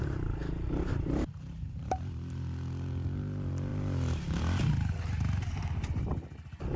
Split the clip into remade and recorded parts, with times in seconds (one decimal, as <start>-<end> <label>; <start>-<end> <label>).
0.0-0.4 recorded; 0.4-1.9 remade; 1.9-6.8 recorded

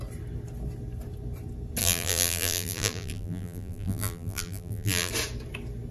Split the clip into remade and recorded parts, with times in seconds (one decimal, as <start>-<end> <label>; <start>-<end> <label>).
0.0-1.8 recorded; 1.8-5.1 remade; 5.1-5.9 recorded

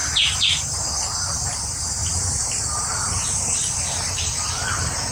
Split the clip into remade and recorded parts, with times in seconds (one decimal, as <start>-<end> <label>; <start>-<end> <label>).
0.0-0.8 remade; 0.8-2.0 recorded; 2.0-2.6 remade; 2.6-5.1 recorded

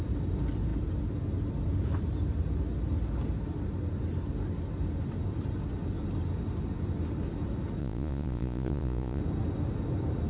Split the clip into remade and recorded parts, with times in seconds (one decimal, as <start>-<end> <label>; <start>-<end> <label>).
0.0-7.8 recorded; 7.8-9.2 remade; 9.2-10.3 recorded